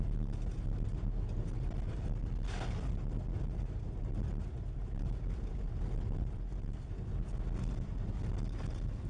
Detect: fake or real real